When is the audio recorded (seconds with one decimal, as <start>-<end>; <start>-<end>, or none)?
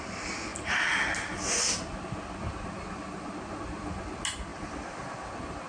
0.0-4.5; 5.3-5.7